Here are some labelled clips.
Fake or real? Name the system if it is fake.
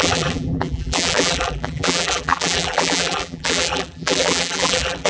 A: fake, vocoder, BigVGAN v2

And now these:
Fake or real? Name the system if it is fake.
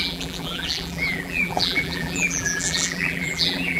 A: fake, vocoder, BigVGAN v2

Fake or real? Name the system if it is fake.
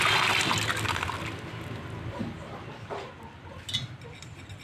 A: real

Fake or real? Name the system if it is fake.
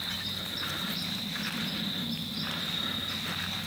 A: real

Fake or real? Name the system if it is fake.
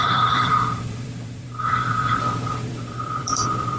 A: fake, vocoder, BigVGAN v2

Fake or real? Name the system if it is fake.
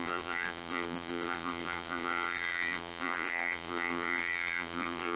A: fake, vocoder, BigVGAN v2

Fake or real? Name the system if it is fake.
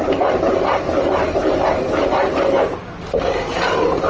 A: real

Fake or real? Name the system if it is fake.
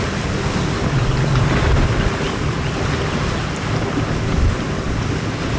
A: real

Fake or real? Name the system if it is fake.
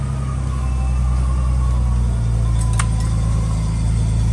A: real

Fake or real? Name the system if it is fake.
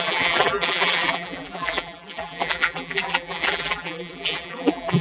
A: fake, vocoder, BigVGAN v2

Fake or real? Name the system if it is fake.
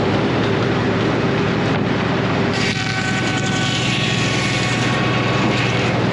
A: fake, vocoder, BigVGAN v2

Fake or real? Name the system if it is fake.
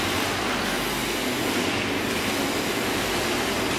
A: real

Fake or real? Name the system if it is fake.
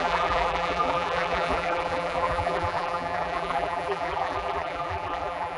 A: fake, vocoder, BigVGAN v2